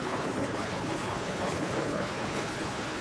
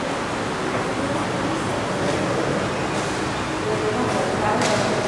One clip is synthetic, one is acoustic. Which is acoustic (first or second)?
second